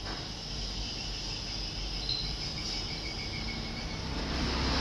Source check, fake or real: real